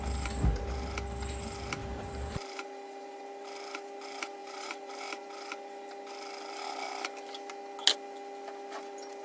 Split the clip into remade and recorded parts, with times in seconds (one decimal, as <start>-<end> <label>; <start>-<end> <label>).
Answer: 0.0-1.8 recorded; 1.8-3.2 remade; 3.2-4.4 recorded; 4.4-4.9 remade; 4.9-9.2 recorded

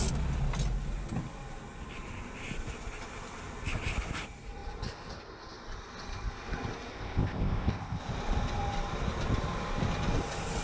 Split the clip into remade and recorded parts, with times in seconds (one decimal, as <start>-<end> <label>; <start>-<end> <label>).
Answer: 0.0-6.9 recorded; 6.9-8.0 remade; 8.0-10.6 recorded

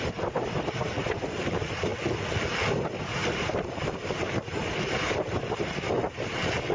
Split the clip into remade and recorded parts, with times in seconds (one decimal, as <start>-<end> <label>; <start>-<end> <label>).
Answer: 0.0-1.9 remade; 1.9-2.8 recorded; 2.8-6.7 remade